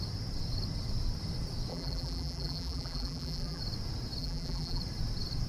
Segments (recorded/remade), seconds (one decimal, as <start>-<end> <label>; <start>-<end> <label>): 0.0-1.7 recorded; 1.7-3.6 remade; 3.6-4.2 recorded; 4.2-4.8 remade; 4.8-5.5 recorded